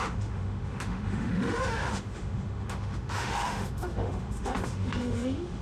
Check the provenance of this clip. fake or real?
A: fake